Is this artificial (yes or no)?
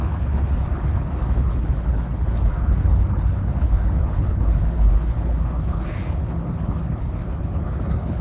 yes